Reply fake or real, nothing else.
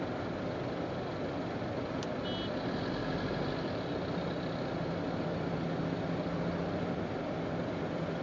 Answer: real